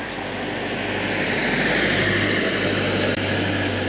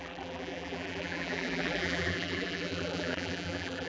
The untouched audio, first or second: first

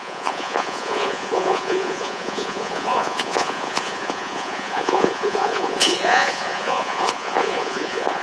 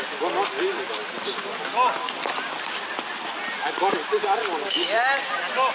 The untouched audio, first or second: second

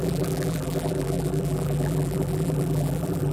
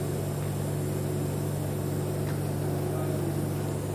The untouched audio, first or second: second